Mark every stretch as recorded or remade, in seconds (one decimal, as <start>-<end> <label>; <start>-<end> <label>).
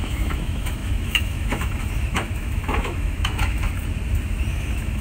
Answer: 0.0-3.6 remade; 3.6-4.5 recorded; 4.5-5.0 remade